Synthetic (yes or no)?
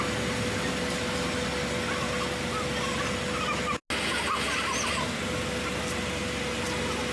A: no